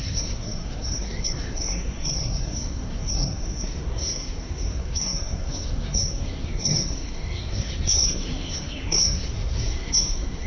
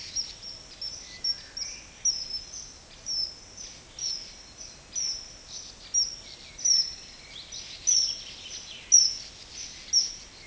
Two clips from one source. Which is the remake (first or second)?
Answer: first